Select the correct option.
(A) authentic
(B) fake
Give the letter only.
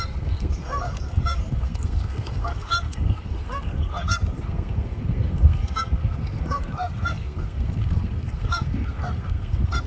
B